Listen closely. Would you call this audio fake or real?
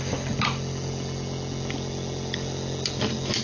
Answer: real